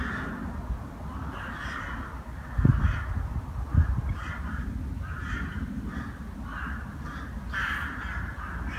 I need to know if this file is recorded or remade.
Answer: recorded